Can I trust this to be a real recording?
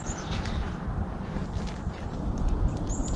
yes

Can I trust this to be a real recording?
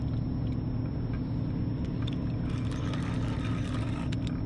yes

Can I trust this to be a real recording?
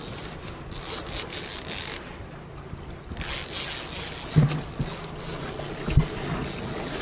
yes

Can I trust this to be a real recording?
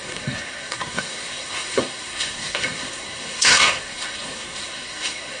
no